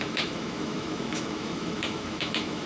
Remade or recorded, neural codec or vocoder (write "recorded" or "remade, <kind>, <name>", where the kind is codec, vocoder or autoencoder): remade, autoencoder, DAC-VAE